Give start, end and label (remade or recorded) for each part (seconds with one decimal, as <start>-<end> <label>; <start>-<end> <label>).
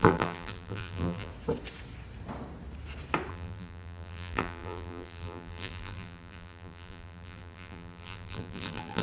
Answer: 0.0-1.3 remade; 1.3-3.3 recorded; 3.3-9.0 remade